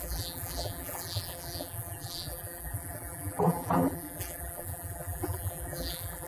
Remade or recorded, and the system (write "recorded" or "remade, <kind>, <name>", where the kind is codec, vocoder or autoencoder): remade, vocoder, BigVGAN v2